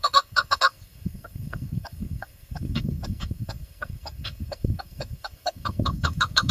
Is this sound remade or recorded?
remade